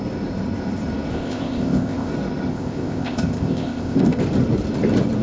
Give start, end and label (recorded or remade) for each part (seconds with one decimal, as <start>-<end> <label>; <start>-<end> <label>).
0.0-1.1 recorded; 1.1-2.1 remade; 2.1-2.5 recorded; 2.5-4.2 remade; 4.2-5.2 recorded